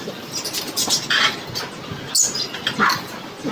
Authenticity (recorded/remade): recorded